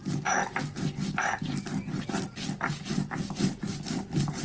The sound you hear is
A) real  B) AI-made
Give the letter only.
A